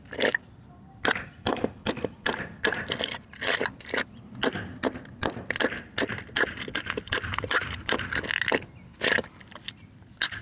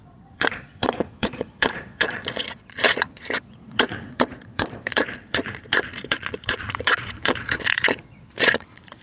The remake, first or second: second